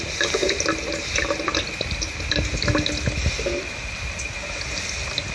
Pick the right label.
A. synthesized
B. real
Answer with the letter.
B